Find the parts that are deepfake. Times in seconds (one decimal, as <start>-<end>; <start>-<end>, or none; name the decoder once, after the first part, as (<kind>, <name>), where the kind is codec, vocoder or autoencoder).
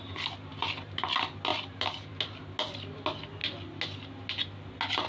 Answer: none